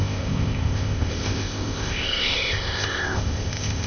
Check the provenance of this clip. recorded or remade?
remade